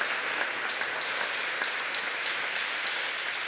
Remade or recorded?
recorded